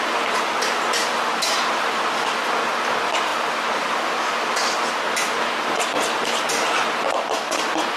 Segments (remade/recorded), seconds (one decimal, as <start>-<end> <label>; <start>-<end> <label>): 0.0-8.0 recorded